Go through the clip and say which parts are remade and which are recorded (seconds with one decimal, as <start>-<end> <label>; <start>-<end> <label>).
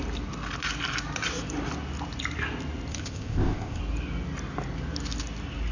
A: 0.0-2.9 recorded; 2.9-3.8 remade; 3.8-5.7 recorded